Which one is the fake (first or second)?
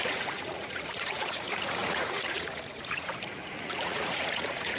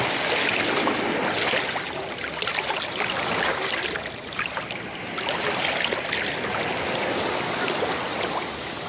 first